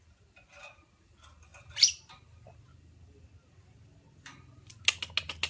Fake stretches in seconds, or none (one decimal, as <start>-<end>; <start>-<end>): none